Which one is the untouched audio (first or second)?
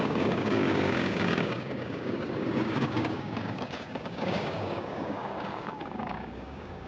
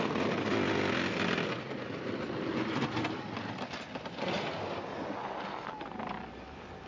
second